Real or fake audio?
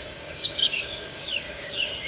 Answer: fake